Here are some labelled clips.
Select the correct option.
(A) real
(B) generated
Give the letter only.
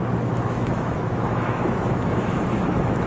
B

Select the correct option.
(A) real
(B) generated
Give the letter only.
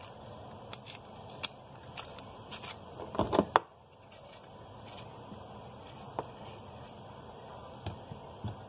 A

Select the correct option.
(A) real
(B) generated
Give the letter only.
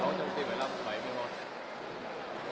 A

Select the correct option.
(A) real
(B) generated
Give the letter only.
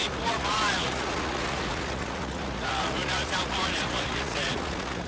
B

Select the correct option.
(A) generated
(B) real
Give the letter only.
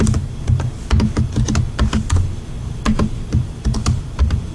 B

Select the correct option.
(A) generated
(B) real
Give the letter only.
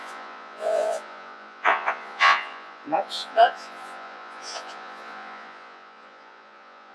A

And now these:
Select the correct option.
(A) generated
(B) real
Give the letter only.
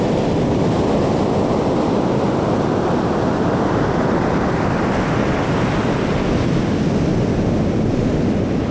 B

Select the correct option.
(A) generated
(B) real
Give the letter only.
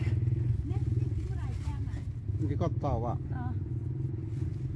B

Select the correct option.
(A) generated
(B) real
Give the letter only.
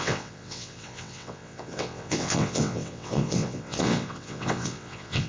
A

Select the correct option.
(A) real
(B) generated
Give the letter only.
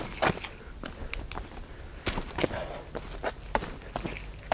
A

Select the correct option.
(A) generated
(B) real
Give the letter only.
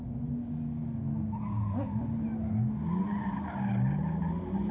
B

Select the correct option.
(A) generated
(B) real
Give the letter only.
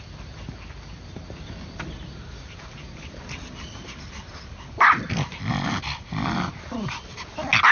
B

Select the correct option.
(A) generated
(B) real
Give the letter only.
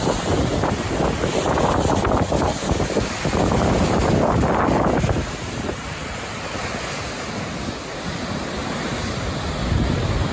B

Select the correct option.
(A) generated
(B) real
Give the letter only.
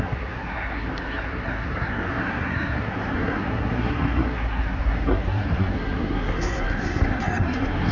A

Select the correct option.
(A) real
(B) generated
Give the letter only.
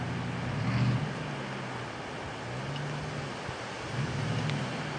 A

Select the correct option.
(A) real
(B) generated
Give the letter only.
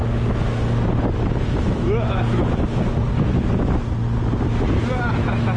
A